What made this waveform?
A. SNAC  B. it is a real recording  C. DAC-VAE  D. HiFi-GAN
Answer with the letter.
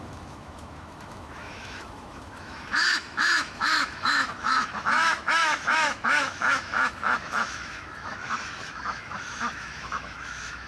C